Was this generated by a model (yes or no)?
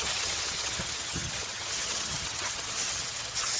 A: yes